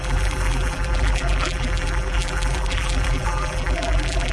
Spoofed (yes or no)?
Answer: yes